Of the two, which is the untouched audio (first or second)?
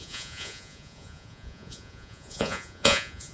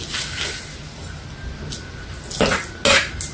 second